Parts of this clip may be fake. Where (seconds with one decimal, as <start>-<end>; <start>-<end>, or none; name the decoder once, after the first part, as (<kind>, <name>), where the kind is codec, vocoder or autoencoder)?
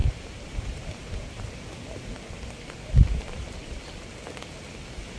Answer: 0.0-1.4 (vocoder, BigVGAN v2)